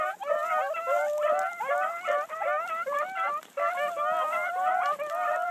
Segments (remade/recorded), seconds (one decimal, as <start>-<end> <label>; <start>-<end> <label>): 0.0-5.5 recorded